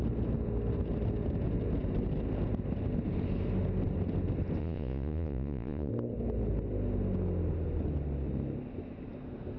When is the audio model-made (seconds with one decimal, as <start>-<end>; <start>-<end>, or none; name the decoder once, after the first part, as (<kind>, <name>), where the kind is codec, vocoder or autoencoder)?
4.6-5.9 (vocoder, Vocos)